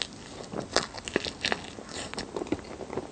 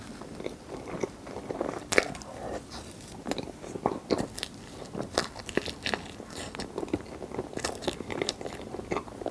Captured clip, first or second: first